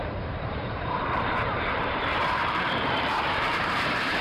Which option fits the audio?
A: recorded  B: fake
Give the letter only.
B